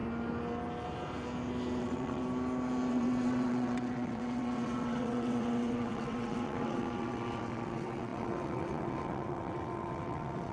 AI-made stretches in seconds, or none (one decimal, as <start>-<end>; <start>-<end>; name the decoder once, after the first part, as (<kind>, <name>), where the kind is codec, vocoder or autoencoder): 1.8-2.2 (vocoder, WaveNeXt); 2.9-10.5